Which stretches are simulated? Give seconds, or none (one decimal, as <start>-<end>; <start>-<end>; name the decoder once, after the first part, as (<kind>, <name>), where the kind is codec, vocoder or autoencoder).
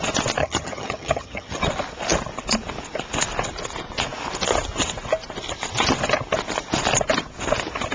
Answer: 0.4-1.6 (vocoder, HiFi-GAN)